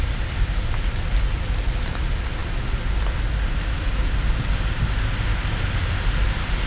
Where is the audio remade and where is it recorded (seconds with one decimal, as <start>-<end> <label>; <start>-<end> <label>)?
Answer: 0.0-6.7 recorded